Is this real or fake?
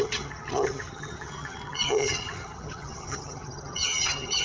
fake